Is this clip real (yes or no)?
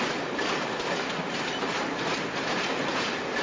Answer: yes